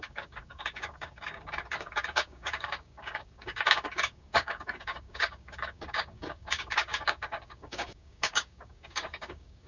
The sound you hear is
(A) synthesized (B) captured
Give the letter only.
A